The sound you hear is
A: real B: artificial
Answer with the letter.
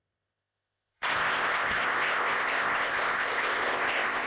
B